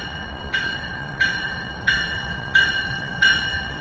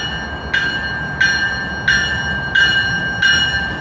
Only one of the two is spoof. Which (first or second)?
first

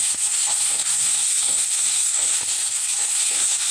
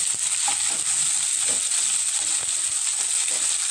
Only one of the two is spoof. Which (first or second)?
first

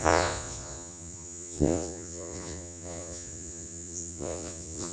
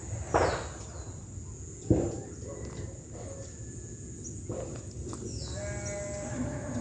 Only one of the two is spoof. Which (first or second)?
first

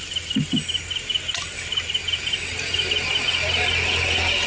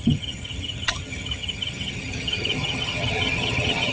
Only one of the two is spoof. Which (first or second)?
second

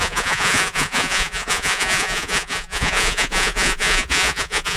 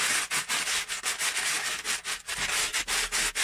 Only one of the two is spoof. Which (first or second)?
first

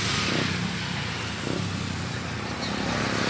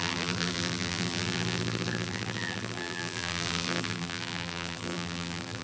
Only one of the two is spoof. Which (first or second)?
second